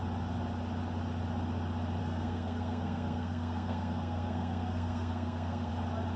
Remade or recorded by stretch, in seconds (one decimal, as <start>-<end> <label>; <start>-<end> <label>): 0.0-2.0 recorded; 2.0-5.7 remade; 5.7-6.2 recorded